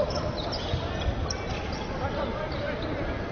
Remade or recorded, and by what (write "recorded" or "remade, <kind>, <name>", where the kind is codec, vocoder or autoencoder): recorded